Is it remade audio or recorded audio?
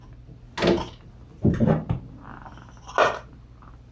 recorded